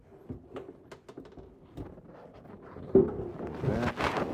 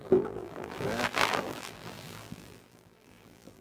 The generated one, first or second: second